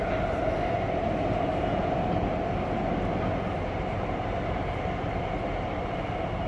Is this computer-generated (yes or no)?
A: no